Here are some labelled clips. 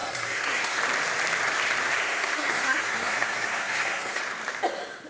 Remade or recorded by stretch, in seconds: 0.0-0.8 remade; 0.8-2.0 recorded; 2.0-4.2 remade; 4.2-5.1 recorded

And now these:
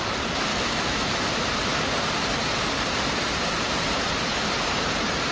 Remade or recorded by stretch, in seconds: 0.0-0.5 recorded; 0.5-1.1 remade; 1.1-5.3 recorded

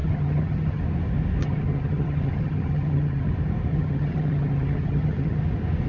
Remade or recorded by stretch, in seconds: 0.0-0.8 remade; 0.8-1.4 recorded; 1.4-3.3 remade; 3.3-3.7 recorded; 3.7-5.4 remade; 5.4-5.9 recorded

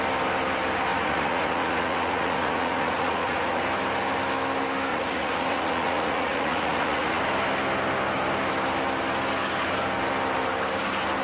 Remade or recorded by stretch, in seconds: 0.0-0.9 recorded; 0.9-3.6 remade; 3.6-4.9 recorded; 4.9-7.2 remade; 7.2-11.2 recorded

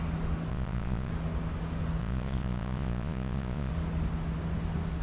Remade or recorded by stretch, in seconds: 0.0-0.5 recorded; 0.5-1.1 remade; 1.1-2.0 recorded; 2.0-3.7 remade; 3.7-5.0 recorded

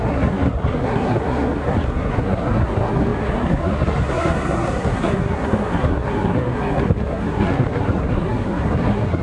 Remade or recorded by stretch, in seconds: 0.0-9.2 remade

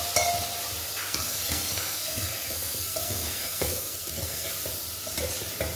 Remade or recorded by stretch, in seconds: 0.0-1.0 recorded; 1.0-4.5 remade; 4.5-5.8 recorded

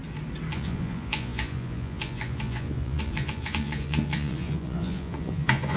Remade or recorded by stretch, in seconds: 0.0-0.5 recorded; 0.5-5.8 remade